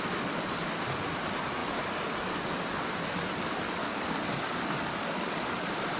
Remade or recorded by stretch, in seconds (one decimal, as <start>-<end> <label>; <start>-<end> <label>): 0.0-3.8 recorded; 3.8-5.4 remade; 5.4-6.0 recorded